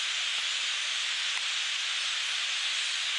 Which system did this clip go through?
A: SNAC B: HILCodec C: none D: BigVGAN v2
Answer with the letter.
C